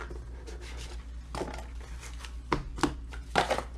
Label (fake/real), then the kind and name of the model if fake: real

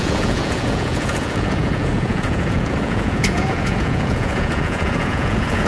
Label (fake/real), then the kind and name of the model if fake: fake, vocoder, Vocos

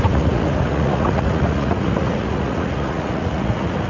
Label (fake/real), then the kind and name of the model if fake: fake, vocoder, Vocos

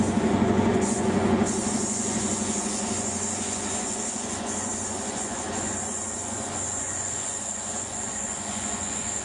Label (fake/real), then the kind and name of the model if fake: fake, vocoder, Vocos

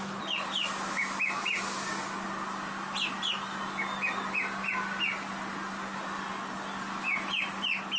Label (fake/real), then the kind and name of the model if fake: real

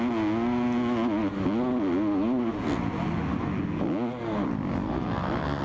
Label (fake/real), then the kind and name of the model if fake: real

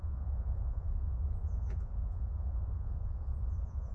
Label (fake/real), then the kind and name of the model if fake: fake, vocoder, Vocos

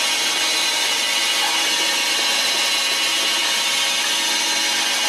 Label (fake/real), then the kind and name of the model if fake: real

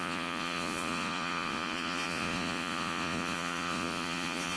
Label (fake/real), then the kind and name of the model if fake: fake, vocoder, Vocos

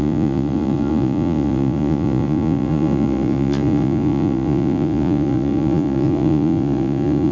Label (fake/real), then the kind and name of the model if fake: fake, vocoder, Vocos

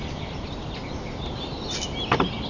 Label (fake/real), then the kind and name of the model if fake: real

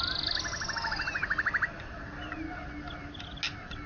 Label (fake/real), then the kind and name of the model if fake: real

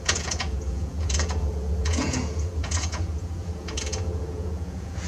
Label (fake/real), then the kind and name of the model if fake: fake, vocoder, Vocos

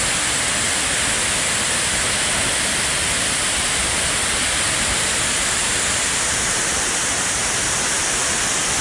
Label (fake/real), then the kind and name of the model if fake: real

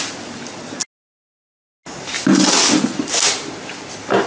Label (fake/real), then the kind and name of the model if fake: real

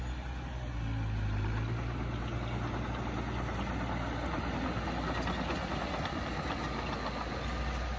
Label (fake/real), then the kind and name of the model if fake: real